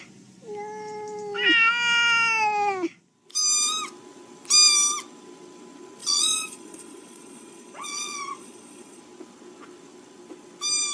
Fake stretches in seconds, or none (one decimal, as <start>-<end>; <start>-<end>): 6.0-9.0